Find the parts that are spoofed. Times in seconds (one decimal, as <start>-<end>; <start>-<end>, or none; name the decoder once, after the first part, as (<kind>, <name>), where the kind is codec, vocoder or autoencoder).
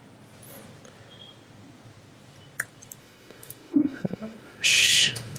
3.0-5.4 (autoencoder, DAC-VAE)